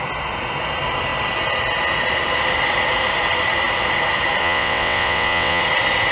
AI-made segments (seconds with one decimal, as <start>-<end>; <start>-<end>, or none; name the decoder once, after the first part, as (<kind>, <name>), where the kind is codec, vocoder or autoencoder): 4.4-5.6 (vocoder, WaveNeXt)